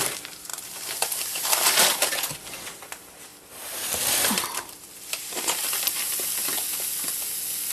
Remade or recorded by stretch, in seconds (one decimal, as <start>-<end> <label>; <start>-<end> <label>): 0.0-0.5 recorded; 0.5-2.8 remade; 2.8-3.3 recorded; 3.3-6.0 remade; 6.0-7.7 recorded